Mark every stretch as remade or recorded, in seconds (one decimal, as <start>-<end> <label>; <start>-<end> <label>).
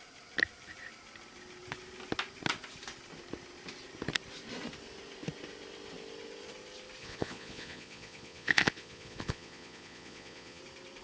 0.0-7.0 recorded; 7.0-10.6 remade; 10.6-11.0 recorded